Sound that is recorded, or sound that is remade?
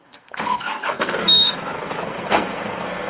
remade